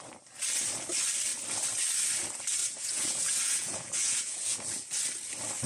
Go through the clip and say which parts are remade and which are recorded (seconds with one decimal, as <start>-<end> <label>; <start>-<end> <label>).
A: 0.0-2.6 recorded; 2.6-4.8 remade; 4.8-5.7 recorded